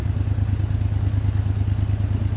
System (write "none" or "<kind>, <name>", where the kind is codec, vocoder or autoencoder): none